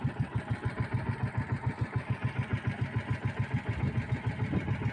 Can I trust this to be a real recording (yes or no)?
yes